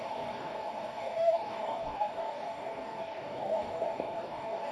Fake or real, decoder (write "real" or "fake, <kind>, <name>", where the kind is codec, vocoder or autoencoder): fake, codec, DAC